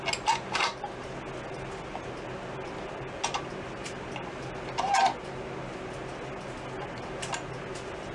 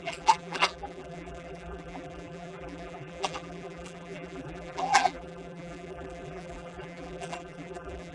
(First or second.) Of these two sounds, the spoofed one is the second